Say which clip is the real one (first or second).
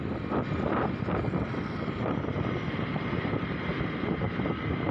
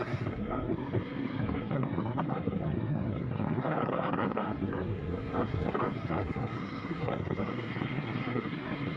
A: first